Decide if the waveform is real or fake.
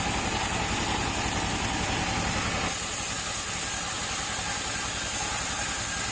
real